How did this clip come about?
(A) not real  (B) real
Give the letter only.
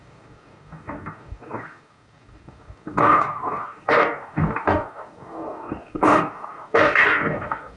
A